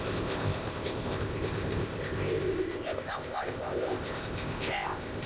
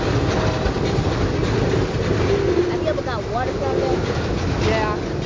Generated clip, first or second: first